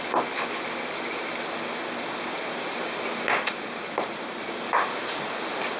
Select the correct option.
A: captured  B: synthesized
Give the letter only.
A